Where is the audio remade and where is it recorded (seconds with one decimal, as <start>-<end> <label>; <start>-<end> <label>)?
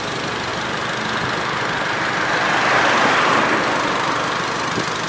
0.0-0.5 remade; 0.5-3.6 recorded; 3.6-5.1 remade